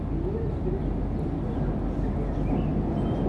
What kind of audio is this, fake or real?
real